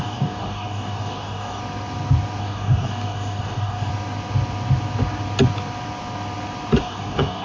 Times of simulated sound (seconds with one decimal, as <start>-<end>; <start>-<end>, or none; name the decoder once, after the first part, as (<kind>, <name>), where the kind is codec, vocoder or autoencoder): 0.0-1.6 (codec, DAC); 2.4-3.9; 6.8-7.4